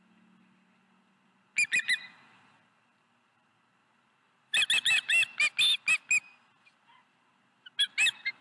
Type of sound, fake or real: real